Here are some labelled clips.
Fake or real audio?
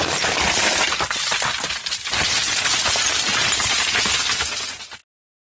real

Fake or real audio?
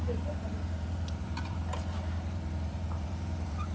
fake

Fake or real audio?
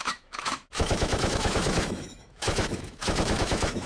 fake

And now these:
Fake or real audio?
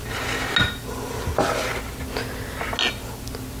real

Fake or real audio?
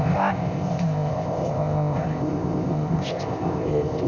fake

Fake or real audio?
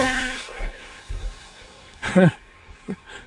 fake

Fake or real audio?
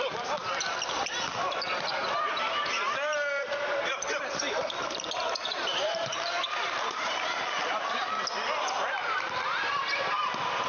fake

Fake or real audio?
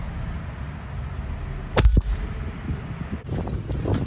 real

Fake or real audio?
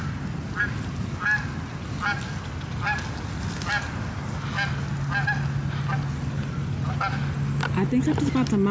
real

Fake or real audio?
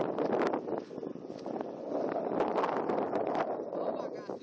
real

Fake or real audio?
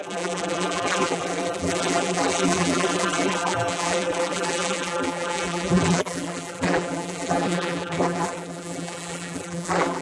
fake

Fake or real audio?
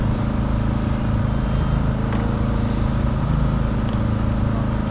real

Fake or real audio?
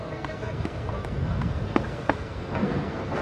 fake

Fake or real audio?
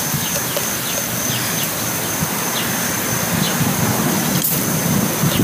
real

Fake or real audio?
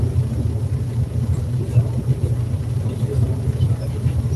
real